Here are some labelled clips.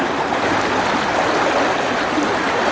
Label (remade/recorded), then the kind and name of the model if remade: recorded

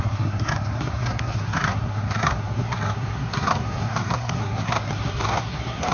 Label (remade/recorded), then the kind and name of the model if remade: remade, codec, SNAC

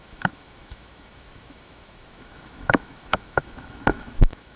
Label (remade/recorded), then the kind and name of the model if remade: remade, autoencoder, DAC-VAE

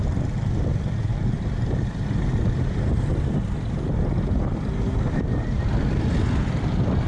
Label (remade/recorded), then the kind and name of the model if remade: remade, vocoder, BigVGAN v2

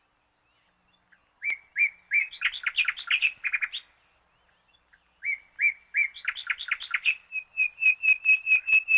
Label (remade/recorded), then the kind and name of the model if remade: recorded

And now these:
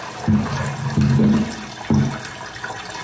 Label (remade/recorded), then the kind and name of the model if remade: recorded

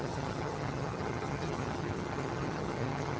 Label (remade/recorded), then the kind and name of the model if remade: remade, vocoder, HiFi-GAN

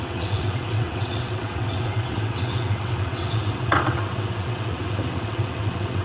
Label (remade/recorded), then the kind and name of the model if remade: remade, vocoder, WaveNeXt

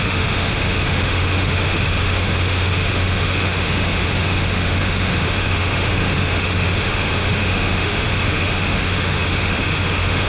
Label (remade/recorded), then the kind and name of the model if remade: remade, autoencoder, DAC-VAE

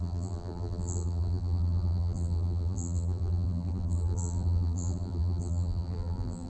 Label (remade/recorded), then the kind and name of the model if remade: remade, vocoder, BigVGAN v2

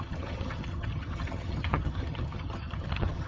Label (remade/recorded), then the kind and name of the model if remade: remade, vocoder, HiFi-GAN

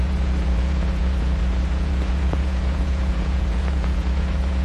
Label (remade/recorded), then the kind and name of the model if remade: remade, vocoder, Vocos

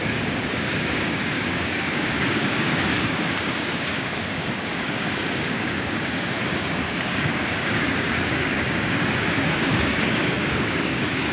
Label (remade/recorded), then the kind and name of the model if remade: remade, codec, DAC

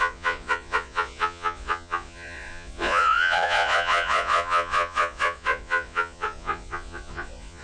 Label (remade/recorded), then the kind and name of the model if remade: remade, vocoder, Vocos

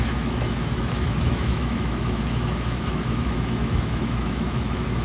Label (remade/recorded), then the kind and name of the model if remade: remade, autoencoder, DAC-VAE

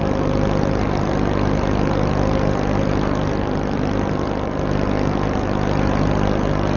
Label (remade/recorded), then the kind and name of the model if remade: remade, vocoder, BigVGAN v2